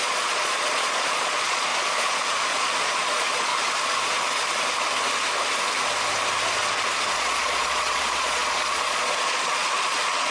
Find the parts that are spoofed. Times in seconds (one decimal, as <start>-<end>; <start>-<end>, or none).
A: 0.0-3.5; 7.0-10.3